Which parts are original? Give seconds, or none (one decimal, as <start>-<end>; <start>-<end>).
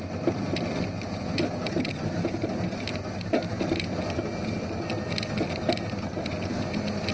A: 0.0-7.1